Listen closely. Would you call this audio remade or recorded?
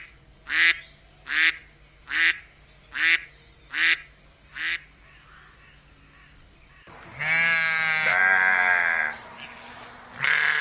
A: recorded